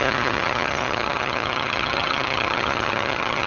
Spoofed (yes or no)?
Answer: yes